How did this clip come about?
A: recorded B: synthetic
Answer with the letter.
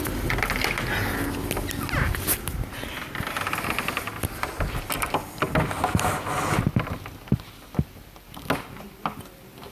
A